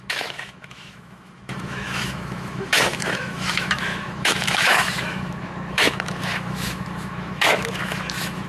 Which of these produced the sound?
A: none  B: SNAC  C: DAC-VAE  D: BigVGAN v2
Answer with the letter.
C